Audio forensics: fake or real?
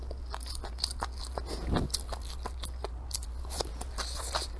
real